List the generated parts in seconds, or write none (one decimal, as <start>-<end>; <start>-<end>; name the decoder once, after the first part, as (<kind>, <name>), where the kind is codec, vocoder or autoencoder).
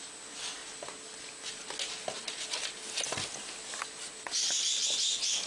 none